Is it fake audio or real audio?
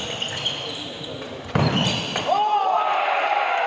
real